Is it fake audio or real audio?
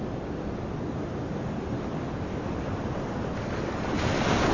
real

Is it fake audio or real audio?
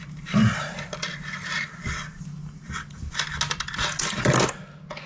real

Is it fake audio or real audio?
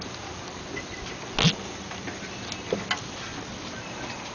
real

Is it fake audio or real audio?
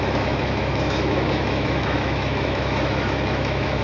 fake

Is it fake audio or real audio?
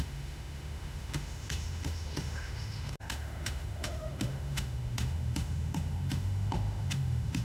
fake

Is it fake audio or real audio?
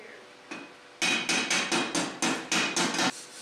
real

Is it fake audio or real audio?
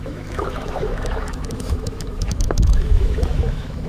fake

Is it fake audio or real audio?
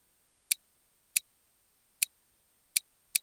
real